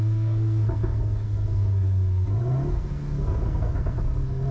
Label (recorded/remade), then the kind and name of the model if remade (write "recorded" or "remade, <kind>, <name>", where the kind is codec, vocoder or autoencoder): remade, codec, SNAC